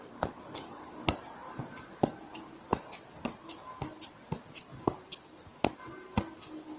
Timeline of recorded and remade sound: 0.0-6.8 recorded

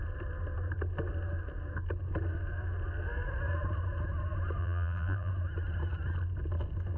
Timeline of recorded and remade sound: 0.0-4.6 recorded; 4.6-5.3 remade; 5.3-7.0 recorded

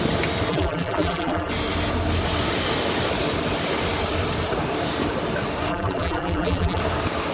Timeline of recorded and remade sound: 0.0-0.5 recorded; 0.5-1.5 remade; 1.5-5.7 recorded; 5.7-6.8 remade; 6.8-7.3 recorded

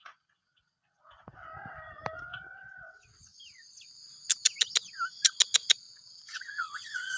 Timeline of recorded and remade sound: 0.0-1.5 remade; 1.5-2.2 recorded; 2.2-3.3 remade; 3.3-5.8 recorded; 5.8-7.2 remade

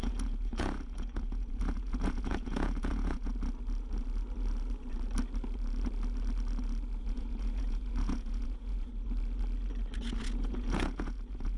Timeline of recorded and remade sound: 0.0-3.3 remade; 3.3-7.0 recorded; 7.0-8.9 remade; 8.9-10.4 recorded; 10.4-11.6 remade

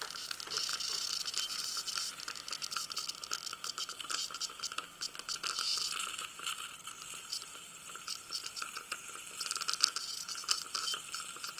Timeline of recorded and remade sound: 0.0-11.6 recorded

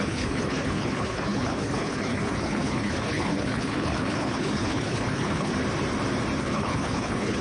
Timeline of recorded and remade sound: 0.0-5.5 remade; 5.5-6.4 recorded; 6.4-7.4 remade